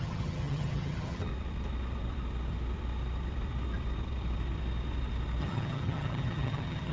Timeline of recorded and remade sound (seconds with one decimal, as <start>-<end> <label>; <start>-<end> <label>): 0.0-1.3 remade; 1.3-5.4 recorded; 5.4-6.9 remade